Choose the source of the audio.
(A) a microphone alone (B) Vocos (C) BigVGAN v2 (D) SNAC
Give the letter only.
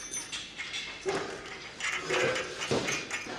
A